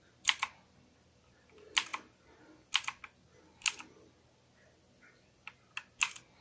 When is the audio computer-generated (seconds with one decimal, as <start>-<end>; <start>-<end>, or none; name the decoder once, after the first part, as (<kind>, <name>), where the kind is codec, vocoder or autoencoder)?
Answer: none